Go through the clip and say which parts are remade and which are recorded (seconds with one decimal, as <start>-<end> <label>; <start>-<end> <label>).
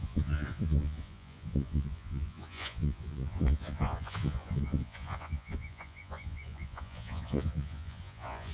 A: 0.0-8.5 remade